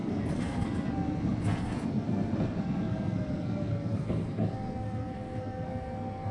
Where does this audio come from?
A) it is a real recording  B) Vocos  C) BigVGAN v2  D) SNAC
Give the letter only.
D